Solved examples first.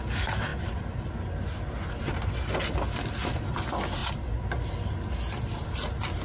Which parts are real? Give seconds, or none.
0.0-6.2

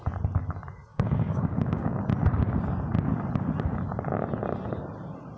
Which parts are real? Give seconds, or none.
0.0-0.9; 2.0-5.4

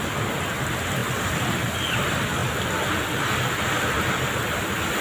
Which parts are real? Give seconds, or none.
0.0-1.0; 1.9-2.4; 3.6-5.0

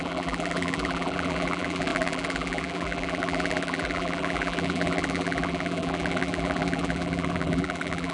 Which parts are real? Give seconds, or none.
none

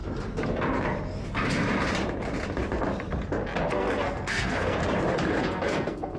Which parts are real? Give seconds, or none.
0.0-3.7; 4.8-5.4

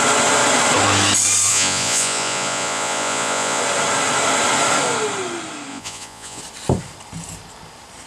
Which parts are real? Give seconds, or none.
0.0-1.5; 3.6-5.7; 6.4-8.1